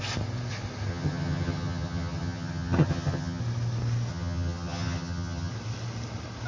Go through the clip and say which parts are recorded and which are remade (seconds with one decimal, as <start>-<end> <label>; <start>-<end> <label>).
0.0-0.9 recorded; 0.9-3.4 remade; 3.4-4.1 recorded; 4.1-5.5 remade; 5.5-6.5 recorded

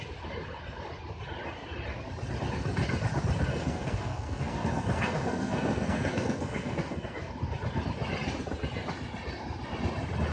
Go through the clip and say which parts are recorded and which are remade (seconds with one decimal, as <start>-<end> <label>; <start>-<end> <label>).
0.0-3.5 recorded; 3.5-7.3 remade; 7.3-10.3 recorded

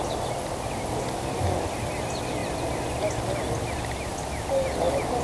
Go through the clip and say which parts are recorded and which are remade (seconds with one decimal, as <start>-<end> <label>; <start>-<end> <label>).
0.0-5.2 recorded

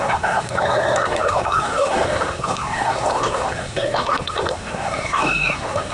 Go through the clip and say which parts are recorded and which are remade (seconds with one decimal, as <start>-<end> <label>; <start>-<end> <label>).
0.0-5.9 remade

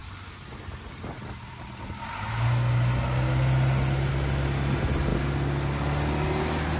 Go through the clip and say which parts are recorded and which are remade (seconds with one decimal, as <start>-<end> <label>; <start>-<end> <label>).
0.0-6.8 recorded

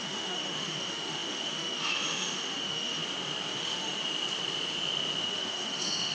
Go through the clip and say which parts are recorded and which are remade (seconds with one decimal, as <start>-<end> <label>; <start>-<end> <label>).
0.0-3.0 remade; 3.0-3.5 recorded; 3.5-4.0 remade; 4.0-5.2 recorded; 5.2-6.1 remade

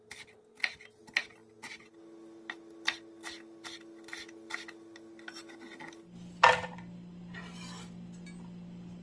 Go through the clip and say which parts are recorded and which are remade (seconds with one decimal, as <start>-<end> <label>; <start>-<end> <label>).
0.0-9.0 recorded